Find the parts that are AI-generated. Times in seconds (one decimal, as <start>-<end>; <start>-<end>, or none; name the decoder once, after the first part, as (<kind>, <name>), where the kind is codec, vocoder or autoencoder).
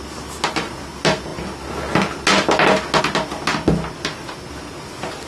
none